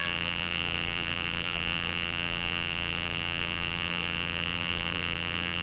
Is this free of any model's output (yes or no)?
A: no